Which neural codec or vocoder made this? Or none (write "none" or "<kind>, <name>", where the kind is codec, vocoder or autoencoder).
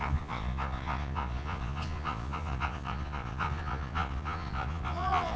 vocoder, Vocos